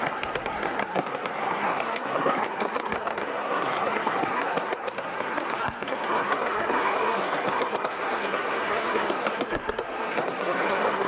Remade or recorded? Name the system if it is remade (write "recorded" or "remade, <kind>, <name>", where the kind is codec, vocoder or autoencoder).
remade, codec, SNAC